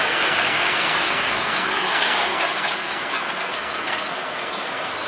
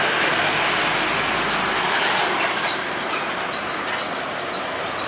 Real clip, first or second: second